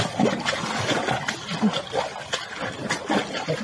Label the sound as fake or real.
real